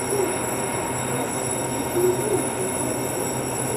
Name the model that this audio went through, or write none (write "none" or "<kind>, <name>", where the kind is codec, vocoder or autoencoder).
none